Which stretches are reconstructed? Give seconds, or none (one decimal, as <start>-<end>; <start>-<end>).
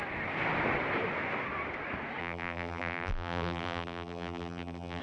2.2-5.0